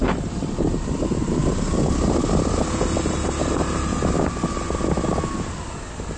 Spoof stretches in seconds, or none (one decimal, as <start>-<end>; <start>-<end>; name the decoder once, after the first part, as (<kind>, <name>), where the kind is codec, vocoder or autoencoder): none